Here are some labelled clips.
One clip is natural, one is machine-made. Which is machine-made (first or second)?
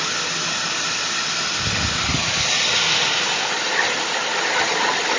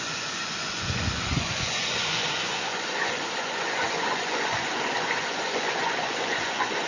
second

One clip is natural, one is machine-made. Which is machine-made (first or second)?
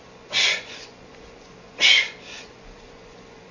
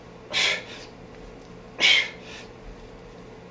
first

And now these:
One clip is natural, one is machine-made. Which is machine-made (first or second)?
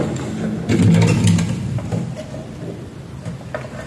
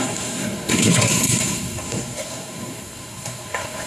second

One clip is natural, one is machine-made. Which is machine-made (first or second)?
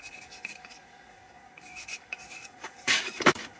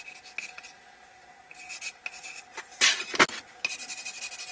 first